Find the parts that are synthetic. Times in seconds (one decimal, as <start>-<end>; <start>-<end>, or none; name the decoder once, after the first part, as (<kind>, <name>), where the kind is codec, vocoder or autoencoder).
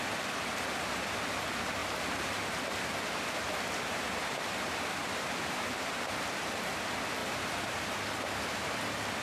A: 5.0-6.3 (vocoder, BigVGAN v2); 7.2-7.8